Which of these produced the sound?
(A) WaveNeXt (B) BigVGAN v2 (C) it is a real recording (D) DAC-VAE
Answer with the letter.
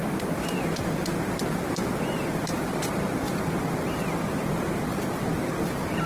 C